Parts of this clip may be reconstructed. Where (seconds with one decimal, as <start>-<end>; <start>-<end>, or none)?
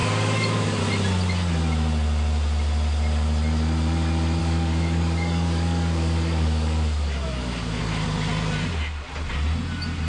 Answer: 0.0-0.8; 4.4-7.8